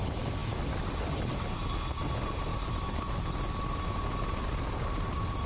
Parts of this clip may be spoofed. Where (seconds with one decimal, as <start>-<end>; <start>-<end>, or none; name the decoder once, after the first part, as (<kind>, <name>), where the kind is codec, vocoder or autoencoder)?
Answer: none